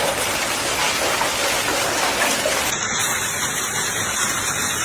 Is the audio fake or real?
real